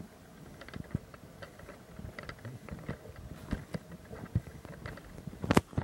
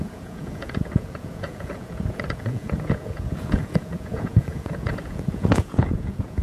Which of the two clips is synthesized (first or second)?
second